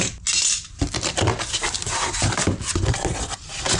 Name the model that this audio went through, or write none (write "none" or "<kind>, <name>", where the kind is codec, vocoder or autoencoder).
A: none